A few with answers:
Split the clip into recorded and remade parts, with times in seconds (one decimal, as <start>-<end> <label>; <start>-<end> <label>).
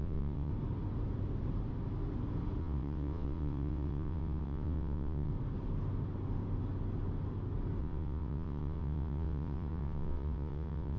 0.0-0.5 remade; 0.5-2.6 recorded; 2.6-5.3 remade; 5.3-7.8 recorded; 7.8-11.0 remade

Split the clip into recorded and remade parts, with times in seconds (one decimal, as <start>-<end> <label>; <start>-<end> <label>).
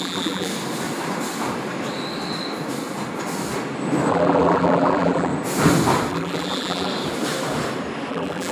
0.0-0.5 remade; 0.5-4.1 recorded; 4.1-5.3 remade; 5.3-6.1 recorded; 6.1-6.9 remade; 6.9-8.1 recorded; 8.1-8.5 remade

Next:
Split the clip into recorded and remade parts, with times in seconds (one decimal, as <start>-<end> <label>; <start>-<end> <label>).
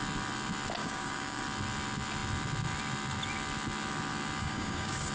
0.0-0.8 recorded; 0.8-1.4 remade; 1.4-4.4 recorded; 4.4-5.1 remade